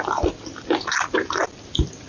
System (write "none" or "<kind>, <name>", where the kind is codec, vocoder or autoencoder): none